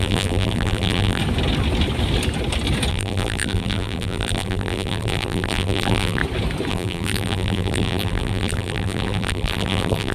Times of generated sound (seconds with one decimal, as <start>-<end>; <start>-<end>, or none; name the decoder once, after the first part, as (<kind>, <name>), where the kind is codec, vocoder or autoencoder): 0.0-1.2 (vocoder, BigVGAN v2); 2.9-6.2; 6.7-10.1